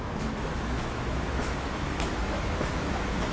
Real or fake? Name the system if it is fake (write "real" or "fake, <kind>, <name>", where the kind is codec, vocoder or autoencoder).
fake, autoencoder, DAC-VAE